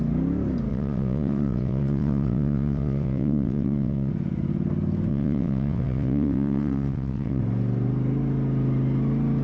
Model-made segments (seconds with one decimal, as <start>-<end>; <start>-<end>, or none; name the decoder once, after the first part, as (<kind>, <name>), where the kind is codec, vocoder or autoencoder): 0.7-4.1 (vocoder, WaveNeXt); 5.1-7.4